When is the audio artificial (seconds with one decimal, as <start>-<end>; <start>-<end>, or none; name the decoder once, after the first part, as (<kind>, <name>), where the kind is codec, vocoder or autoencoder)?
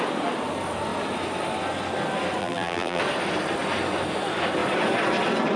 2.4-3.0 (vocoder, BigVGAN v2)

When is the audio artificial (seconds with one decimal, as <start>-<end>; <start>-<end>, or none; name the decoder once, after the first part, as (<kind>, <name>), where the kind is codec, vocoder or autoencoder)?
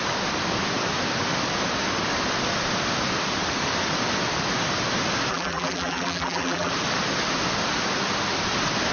5.3-6.7 (vocoder, BigVGAN v2)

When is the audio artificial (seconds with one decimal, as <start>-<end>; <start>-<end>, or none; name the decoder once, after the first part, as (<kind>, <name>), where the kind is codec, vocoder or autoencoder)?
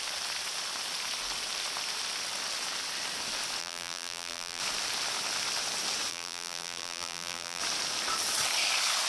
3.6-4.6 (vocoder, BigVGAN v2); 6.1-7.6